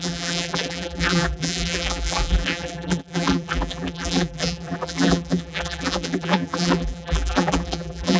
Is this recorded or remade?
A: remade